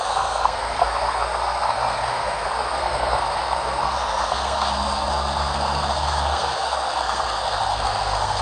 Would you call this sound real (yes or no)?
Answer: no